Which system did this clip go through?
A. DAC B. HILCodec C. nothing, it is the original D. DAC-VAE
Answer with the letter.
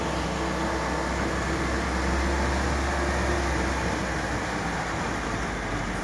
C